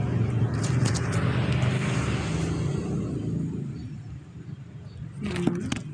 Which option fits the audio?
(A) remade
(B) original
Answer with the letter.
B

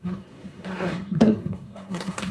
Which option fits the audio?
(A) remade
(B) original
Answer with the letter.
A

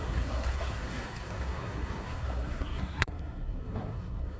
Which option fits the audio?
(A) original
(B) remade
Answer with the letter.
B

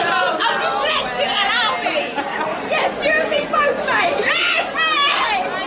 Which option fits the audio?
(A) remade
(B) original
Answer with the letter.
B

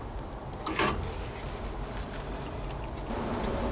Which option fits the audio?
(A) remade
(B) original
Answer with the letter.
B